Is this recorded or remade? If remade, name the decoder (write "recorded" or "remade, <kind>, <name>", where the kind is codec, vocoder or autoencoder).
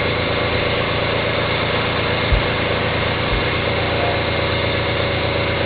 recorded